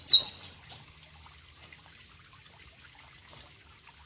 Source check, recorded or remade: recorded